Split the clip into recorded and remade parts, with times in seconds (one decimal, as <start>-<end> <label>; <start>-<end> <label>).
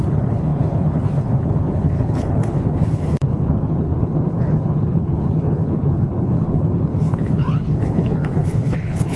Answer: 0.0-9.2 remade